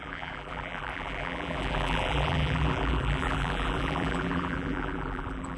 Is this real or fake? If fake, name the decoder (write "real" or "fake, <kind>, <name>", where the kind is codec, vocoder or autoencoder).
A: fake, vocoder, BigVGAN v2